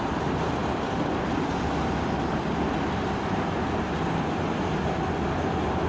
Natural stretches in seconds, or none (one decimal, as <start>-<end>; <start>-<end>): 0.0-5.9